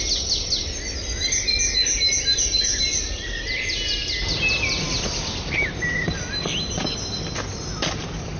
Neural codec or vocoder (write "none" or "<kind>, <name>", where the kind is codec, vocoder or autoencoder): none